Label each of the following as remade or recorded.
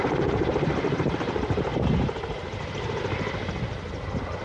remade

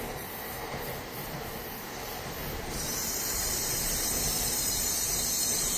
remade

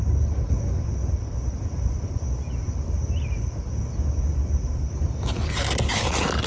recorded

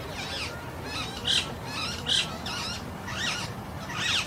recorded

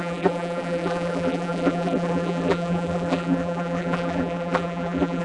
remade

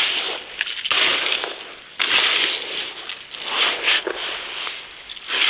recorded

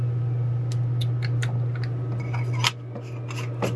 recorded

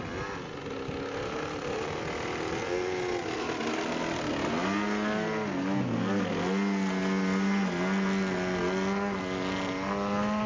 recorded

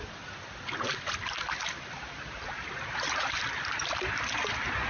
remade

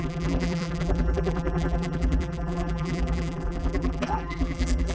remade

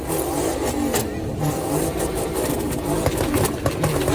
recorded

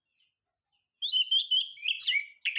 recorded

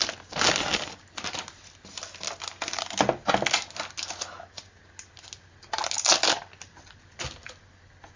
recorded